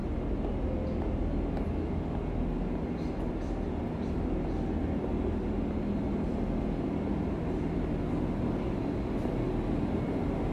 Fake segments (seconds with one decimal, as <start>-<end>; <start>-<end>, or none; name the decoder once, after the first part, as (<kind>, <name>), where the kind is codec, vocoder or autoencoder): none